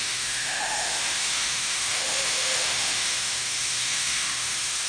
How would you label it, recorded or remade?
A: remade